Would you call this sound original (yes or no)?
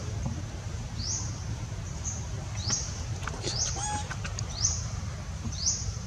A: no